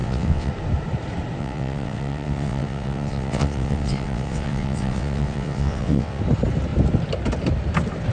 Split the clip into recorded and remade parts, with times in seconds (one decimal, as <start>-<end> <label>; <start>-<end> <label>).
0.0-0.5 remade; 0.5-1.4 recorded; 1.4-6.2 remade; 6.2-8.1 recorded